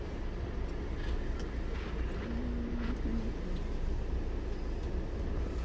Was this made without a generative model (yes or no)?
yes